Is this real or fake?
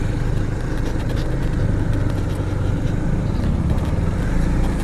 real